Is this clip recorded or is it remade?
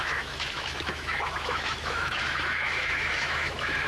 remade